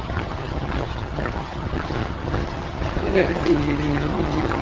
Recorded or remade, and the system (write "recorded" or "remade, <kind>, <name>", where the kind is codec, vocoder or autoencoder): remade, vocoder, HiFi-GAN